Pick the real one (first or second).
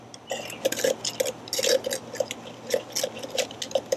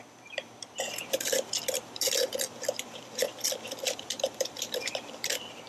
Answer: first